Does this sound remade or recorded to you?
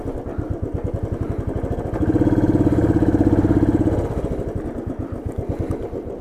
recorded